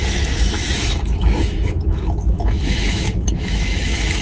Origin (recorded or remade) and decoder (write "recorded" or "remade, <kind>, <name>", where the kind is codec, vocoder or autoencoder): remade, autoencoder, DAC-VAE